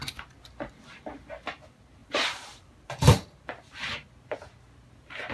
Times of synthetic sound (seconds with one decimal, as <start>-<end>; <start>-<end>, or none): 2.0-3.3